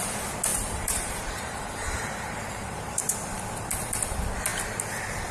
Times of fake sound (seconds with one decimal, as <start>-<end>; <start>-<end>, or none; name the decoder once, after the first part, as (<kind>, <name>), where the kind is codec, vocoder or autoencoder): 0.5-3.0 (vocoder, BigVGAN v2)